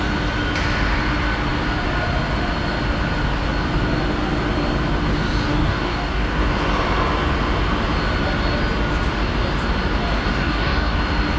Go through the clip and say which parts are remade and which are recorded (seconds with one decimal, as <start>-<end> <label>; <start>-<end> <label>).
0.0-5.5 recorded; 5.5-6.5 remade; 6.5-10.3 recorded; 10.3-11.0 remade; 11.0-11.4 recorded